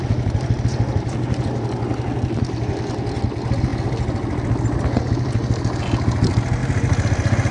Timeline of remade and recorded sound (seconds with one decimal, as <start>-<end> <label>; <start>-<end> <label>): 0.0-7.5 recorded